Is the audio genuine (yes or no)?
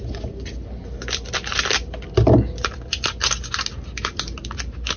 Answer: yes